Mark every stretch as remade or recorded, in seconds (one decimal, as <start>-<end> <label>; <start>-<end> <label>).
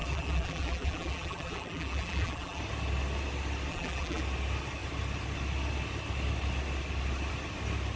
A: 0.0-2.6 remade; 2.6-3.7 recorded; 3.7-4.2 remade; 4.2-8.0 recorded